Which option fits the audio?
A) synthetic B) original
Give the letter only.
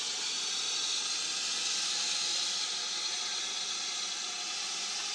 B